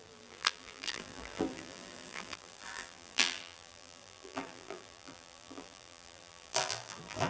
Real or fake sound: fake